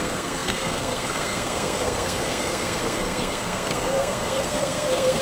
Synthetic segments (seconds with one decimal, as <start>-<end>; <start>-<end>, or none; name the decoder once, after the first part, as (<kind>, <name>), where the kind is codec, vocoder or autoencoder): 0.0-5.2 (codec, SNAC)